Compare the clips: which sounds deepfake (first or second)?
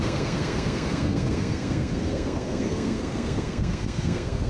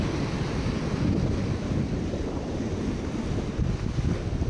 first